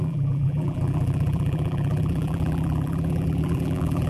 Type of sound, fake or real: fake